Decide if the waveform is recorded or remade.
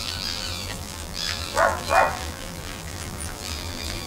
remade